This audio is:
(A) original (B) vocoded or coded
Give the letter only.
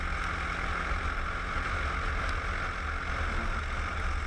A